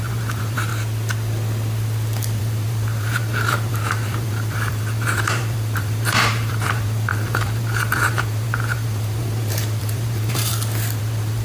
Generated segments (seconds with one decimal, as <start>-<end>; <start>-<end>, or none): 0.0-0.7; 2.4-10.5; 11.0-11.4